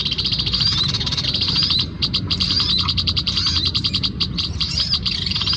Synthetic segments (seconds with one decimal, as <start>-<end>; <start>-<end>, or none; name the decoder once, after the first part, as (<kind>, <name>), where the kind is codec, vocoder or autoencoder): 0.6-5.6 (vocoder, BigVGAN v2)